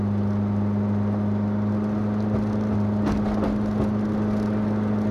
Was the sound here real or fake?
real